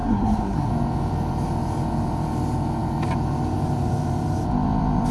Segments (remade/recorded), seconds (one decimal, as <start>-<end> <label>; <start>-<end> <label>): 0.0-0.7 remade; 0.7-5.1 recorded